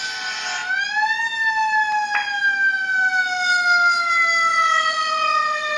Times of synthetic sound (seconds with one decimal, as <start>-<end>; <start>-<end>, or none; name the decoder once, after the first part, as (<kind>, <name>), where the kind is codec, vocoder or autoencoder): 4.5-5.8 (vocoder, Vocos)